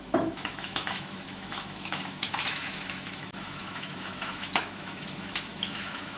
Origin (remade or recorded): remade